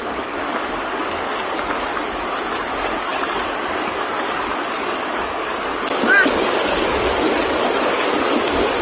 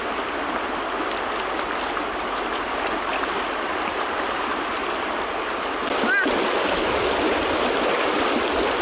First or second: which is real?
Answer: second